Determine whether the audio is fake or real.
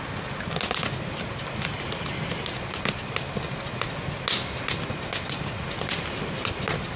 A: real